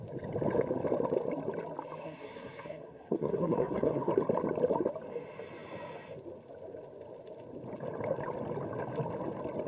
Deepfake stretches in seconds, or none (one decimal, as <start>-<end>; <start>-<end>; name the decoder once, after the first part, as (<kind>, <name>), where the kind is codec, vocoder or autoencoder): 2.0-4.1 (codec, SNAC)